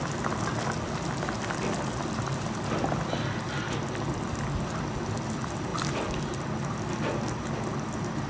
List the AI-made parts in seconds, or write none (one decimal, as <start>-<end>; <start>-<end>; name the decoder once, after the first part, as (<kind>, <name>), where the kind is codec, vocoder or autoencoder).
none